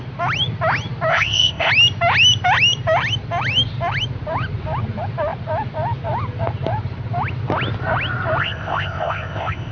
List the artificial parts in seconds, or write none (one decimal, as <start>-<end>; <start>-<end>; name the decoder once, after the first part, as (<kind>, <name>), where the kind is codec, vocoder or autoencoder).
1.1-1.7 (codec, ZipCodec); 8.4-9.7